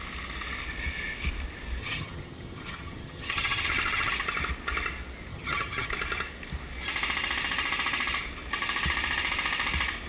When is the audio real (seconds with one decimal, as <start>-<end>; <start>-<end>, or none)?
0.0-1.8; 4.1-5.3; 5.9-10.1